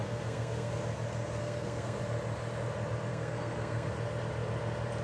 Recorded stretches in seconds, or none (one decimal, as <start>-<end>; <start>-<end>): 0.7-1.4; 2.0-3.1; 3.9-5.0